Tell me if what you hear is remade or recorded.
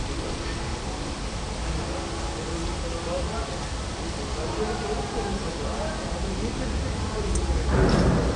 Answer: recorded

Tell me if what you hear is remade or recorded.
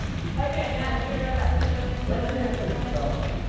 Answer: recorded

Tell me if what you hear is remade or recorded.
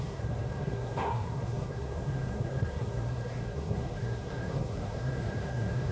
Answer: remade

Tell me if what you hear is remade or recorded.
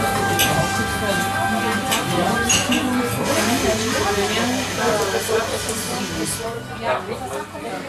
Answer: recorded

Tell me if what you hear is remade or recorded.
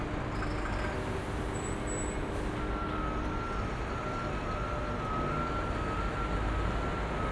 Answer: recorded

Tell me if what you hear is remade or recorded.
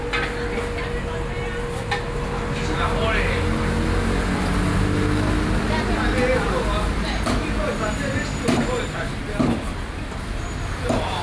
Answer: recorded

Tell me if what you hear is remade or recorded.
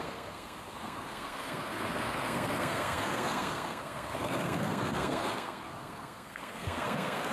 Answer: remade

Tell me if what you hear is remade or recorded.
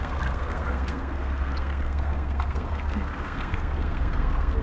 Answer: remade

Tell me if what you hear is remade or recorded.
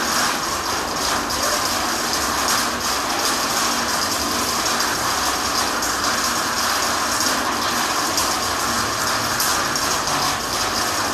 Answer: recorded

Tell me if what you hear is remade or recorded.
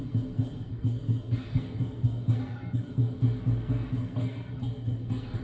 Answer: remade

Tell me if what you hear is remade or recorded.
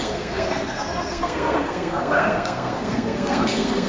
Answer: remade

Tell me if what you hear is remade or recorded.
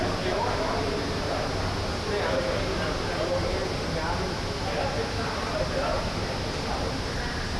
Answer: recorded